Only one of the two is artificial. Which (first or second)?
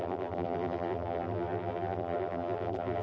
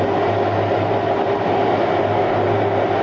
first